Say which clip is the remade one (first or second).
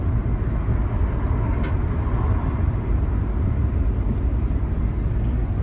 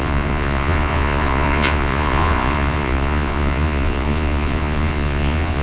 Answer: second